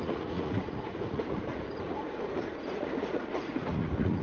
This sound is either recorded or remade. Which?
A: remade